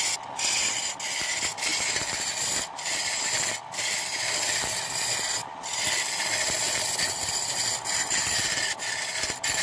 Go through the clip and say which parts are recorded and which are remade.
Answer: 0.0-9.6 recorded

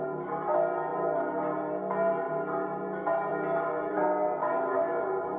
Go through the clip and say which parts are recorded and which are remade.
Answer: 0.0-4.4 recorded; 4.4-5.4 remade

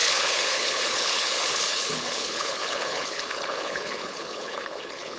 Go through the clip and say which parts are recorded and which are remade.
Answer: 0.0-5.2 remade

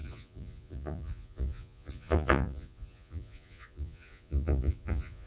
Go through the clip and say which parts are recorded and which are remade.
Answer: 0.0-5.3 remade